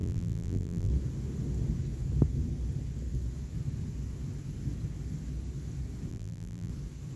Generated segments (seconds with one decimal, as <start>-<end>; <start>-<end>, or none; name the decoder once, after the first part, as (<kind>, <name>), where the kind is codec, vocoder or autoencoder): 0.0-0.9 (vocoder, BigVGAN v2); 6.1-6.7